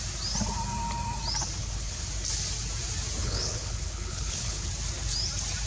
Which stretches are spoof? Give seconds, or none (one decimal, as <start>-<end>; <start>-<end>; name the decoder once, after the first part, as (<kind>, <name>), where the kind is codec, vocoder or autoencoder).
1.6-2.1 (codec, HILCodec); 3.2-4.7